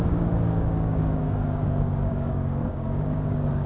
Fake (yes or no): yes